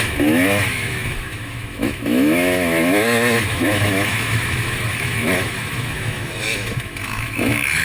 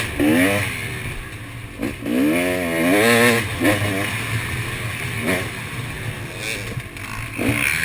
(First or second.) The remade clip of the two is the first